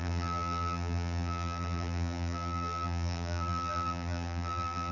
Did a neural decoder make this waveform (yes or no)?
yes